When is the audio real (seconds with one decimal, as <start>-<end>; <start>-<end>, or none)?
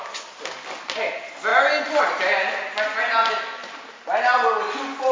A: 0.0-5.1